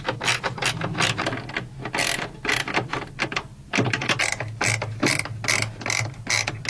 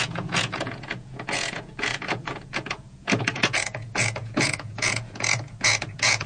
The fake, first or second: second